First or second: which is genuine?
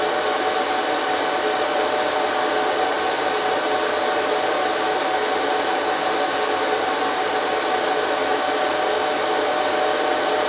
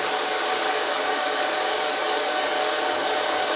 first